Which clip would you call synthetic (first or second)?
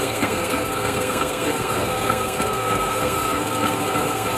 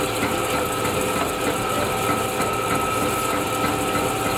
first